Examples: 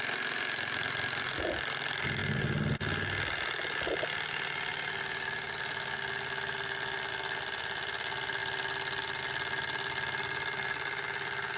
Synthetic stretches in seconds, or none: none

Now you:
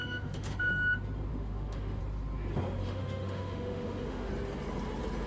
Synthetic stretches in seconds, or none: 0.0-0.7 (autoencoder, DAC-VAE); 1.3-2.0; 2.8-4.3

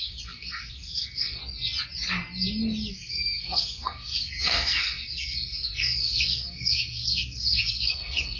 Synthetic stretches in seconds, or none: 0.0-1.4 (codec, SNAC); 2.9-8.4

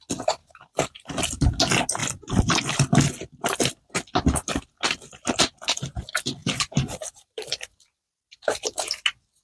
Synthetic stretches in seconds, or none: 0.4-1.4 (vocoder, BigVGAN v2); 6.4-7.5